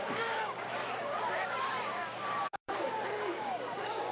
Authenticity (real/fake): fake